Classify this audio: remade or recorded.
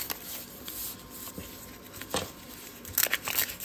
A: recorded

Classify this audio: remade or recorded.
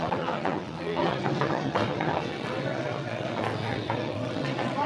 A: remade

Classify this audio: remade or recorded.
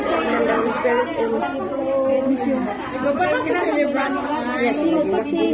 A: recorded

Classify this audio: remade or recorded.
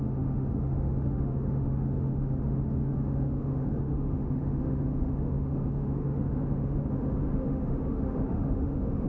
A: remade